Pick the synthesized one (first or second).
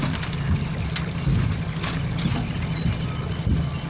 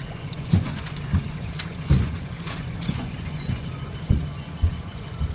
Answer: second